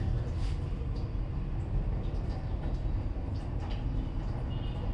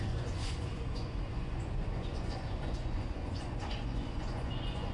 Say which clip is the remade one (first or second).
second